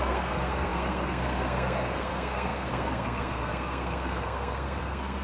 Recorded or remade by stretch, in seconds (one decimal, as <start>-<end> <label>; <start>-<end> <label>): 0.0-5.2 remade